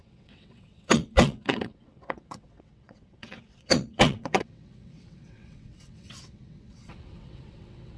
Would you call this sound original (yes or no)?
no